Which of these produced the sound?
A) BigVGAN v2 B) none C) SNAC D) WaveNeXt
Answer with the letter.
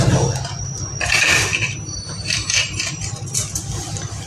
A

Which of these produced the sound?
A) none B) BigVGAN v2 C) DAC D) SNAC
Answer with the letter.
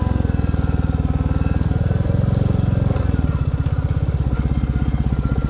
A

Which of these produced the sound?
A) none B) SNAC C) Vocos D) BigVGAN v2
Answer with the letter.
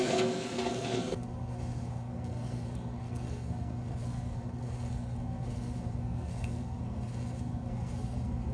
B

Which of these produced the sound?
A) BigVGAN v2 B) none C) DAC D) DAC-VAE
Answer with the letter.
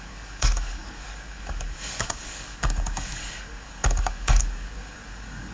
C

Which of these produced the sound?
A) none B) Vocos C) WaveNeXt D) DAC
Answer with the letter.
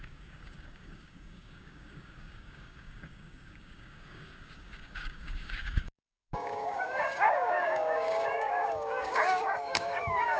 D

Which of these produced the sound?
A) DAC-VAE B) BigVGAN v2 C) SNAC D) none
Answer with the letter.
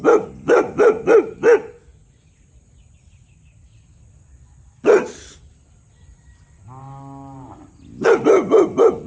D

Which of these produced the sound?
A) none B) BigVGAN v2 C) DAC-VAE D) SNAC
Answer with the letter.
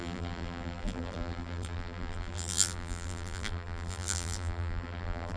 B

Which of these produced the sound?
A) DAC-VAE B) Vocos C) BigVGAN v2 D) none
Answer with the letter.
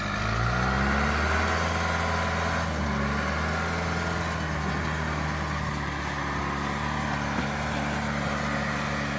D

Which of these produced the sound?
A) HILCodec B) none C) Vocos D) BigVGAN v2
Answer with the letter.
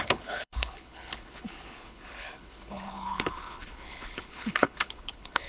A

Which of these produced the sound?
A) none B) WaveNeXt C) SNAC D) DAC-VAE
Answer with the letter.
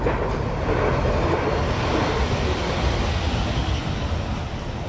A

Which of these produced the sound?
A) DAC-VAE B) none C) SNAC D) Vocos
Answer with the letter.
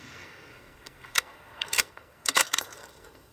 C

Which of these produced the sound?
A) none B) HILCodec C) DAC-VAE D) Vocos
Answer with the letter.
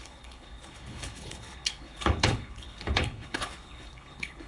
B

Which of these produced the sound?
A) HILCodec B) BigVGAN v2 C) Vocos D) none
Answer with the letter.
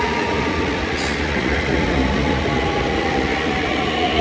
C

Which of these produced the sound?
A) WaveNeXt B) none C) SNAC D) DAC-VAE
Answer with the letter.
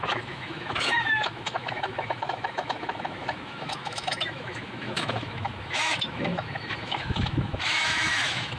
D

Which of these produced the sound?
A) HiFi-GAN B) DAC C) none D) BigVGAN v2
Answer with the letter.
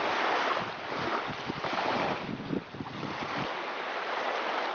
C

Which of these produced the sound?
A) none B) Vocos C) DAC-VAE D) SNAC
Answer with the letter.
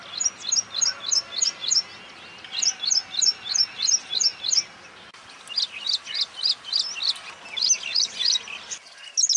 A